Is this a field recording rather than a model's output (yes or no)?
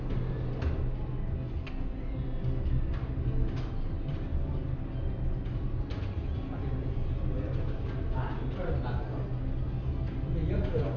yes